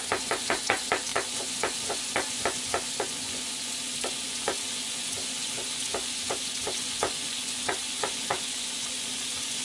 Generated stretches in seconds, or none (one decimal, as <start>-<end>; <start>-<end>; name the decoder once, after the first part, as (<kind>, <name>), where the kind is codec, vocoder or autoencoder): 0.0-9.6 (vocoder, Vocos)